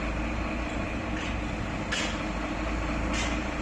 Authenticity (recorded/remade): recorded